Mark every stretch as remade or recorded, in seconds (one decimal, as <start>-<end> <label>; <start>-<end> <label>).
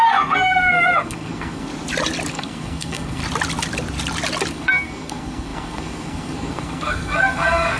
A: 0.0-1.7 remade; 1.7-2.3 recorded; 2.3-3.2 remade; 3.2-4.5 recorded; 4.5-7.8 remade